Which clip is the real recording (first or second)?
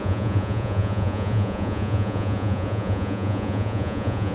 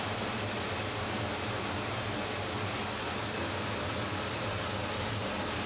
second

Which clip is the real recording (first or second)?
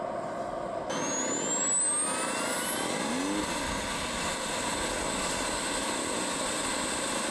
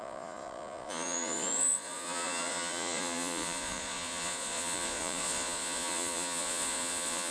first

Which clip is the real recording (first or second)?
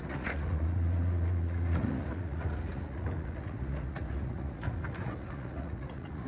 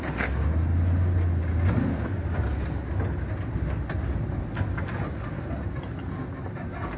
second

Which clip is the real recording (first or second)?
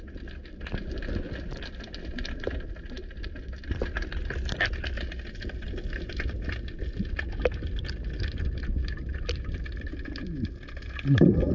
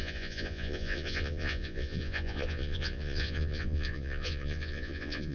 first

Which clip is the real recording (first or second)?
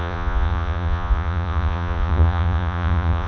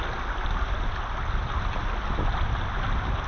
second